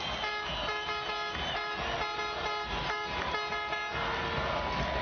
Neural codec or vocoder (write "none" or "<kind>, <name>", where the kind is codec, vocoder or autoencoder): none